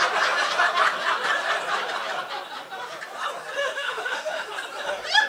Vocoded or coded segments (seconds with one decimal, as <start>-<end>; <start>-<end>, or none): 3.6-4.5